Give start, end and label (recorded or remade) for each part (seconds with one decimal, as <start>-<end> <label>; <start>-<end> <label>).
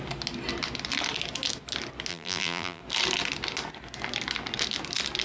0.0-2.1 recorded; 2.1-2.8 remade; 2.8-5.2 recorded